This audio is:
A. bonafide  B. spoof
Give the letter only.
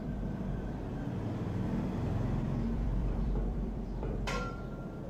B